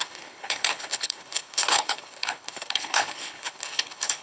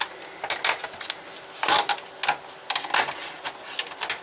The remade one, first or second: first